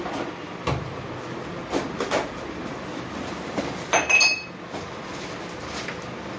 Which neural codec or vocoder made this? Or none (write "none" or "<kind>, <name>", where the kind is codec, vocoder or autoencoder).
none